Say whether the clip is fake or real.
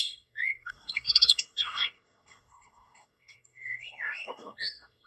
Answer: fake